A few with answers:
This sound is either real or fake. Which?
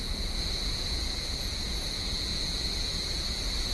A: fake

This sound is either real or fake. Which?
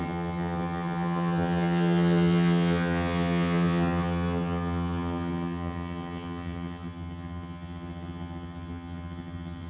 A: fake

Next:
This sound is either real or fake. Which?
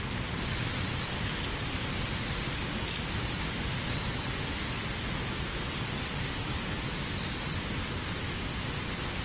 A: real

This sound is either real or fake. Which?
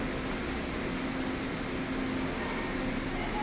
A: real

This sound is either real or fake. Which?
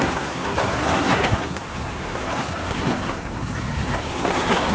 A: fake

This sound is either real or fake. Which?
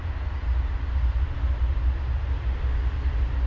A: real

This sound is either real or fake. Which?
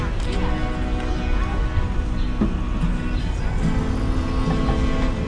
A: real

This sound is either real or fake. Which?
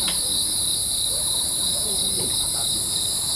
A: real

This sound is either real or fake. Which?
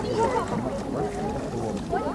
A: real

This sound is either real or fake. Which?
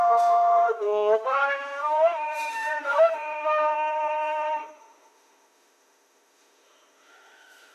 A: fake